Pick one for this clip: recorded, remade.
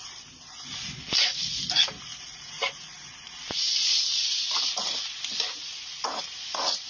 recorded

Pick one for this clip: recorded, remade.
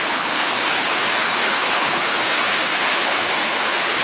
remade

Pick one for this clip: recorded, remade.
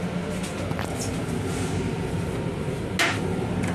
recorded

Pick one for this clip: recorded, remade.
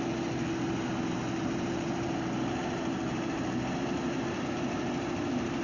recorded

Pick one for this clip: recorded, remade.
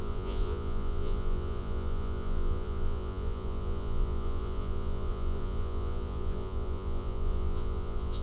remade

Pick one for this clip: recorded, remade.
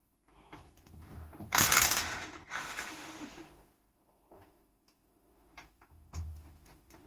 remade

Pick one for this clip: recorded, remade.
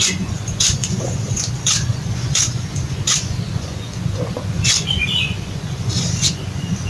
remade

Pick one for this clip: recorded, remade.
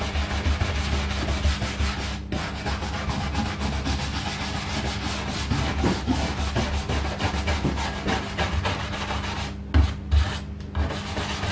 recorded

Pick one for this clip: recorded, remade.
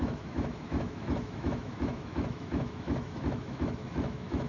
remade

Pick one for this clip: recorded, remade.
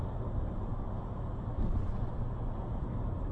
recorded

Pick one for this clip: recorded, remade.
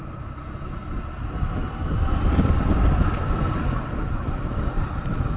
remade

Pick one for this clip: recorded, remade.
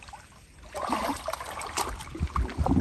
recorded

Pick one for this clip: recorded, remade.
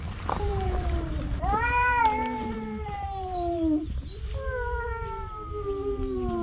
remade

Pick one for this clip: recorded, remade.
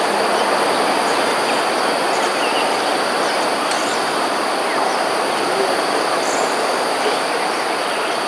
recorded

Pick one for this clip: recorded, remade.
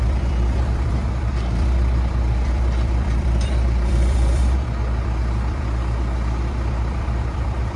remade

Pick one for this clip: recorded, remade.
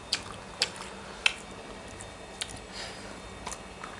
recorded